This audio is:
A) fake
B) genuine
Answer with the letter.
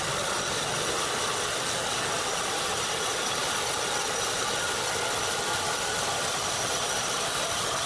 B